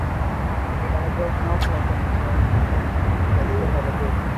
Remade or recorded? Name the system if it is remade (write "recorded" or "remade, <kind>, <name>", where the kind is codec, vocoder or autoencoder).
recorded